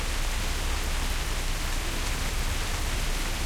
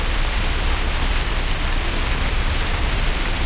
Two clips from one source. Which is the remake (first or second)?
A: second